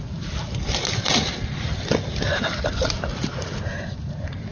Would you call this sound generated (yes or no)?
no